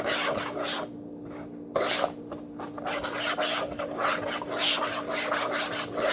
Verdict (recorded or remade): recorded